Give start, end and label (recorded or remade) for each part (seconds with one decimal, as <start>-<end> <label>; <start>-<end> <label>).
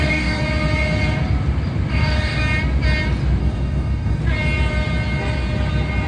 0.0-0.4 remade; 0.4-1.9 recorded; 1.9-2.4 remade; 2.4-3.4 recorded; 3.4-4.2 remade; 4.2-6.1 recorded